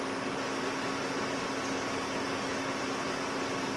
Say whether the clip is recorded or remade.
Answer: recorded